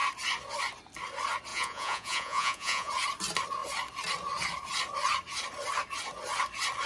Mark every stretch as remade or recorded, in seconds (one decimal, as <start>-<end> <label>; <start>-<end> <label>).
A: 0.0-1.5 recorded; 1.5-2.9 remade; 2.9-6.9 recorded